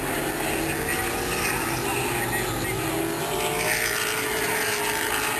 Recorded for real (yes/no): yes